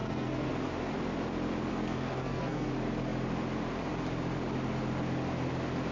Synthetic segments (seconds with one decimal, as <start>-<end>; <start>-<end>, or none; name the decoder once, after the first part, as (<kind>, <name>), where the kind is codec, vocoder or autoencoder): 0.0-0.5 (codec, SNAC); 1.7-2.7